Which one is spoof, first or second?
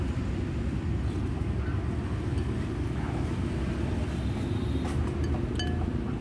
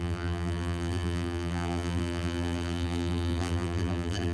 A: second